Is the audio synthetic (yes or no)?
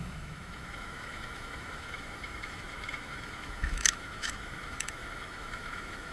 yes